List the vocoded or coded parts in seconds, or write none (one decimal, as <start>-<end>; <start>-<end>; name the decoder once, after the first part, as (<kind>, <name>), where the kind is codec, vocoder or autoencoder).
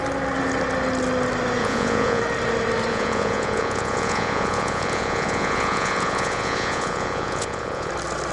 1.6-2.2 (vocoder, Vocos); 2.9-7.9